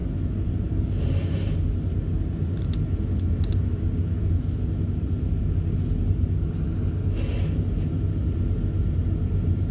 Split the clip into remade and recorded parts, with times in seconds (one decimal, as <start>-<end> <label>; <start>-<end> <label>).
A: 0.0-9.7 recorded

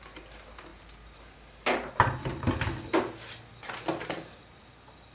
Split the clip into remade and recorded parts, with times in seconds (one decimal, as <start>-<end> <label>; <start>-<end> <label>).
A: 0.0-5.1 recorded

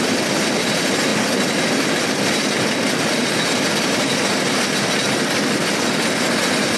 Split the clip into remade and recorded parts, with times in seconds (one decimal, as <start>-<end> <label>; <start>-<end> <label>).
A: 0.0-6.8 recorded